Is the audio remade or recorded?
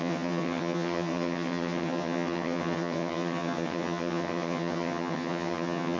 remade